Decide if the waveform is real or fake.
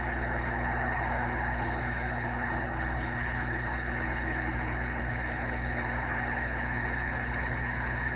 fake